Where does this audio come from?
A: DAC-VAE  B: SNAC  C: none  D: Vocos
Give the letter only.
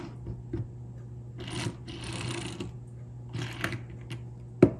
C